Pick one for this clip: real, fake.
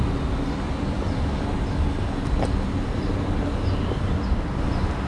real